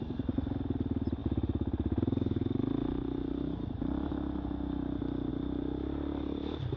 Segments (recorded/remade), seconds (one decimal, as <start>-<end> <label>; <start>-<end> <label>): 0.0-6.8 recorded